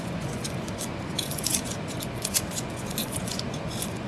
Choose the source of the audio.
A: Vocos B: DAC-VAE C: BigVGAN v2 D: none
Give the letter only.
A